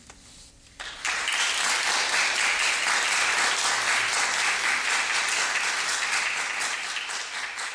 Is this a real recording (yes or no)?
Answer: yes